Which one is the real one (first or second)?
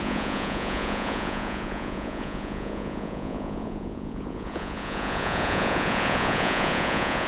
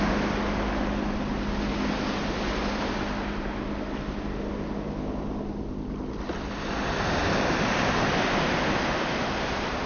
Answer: second